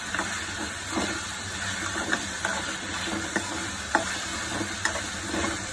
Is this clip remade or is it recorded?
recorded